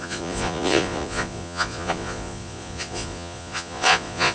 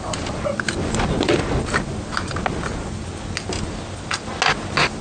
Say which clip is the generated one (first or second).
first